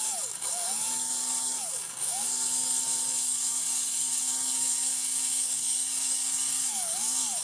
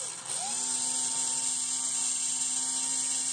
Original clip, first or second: second